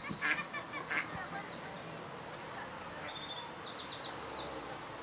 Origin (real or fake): real